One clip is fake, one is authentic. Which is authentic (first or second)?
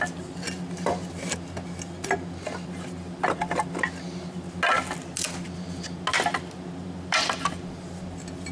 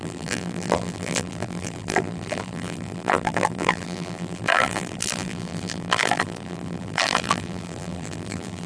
first